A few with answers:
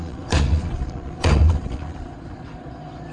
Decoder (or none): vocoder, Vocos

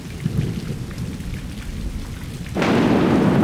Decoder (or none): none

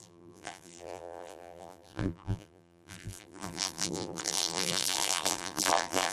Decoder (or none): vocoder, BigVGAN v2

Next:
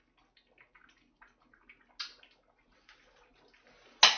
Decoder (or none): none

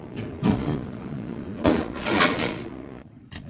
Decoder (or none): vocoder, Vocos